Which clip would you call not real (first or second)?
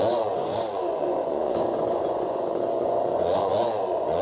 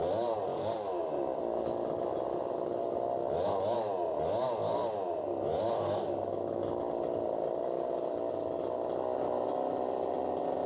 first